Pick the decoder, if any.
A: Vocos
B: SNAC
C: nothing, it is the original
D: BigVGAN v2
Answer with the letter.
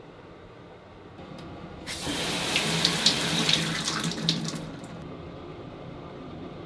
D